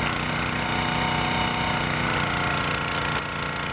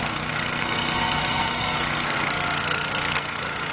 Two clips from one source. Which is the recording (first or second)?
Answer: first